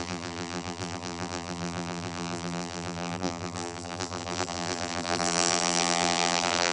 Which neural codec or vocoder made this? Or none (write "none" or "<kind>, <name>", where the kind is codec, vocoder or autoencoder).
vocoder, BigVGAN v2